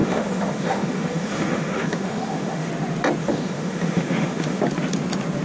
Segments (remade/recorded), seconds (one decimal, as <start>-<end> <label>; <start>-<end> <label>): 0.0-2.7 remade; 2.7-3.2 recorded; 3.2-4.6 remade; 4.6-5.4 recorded